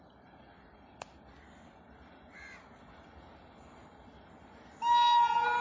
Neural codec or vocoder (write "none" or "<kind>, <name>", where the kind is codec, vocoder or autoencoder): none